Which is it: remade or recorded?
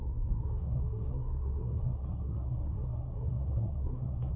remade